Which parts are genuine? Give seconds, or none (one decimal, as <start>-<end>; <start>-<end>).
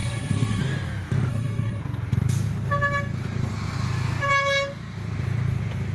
0.6-1.3; 1.8-5.9